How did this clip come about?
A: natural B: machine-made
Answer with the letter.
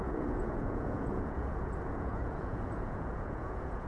B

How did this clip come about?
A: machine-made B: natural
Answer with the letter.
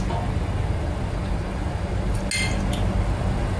B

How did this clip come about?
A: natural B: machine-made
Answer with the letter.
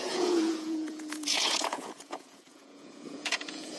B